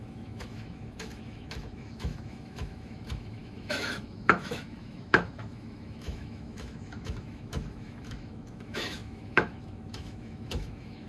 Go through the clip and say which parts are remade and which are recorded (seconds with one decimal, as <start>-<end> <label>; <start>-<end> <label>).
0.0-11.1 remade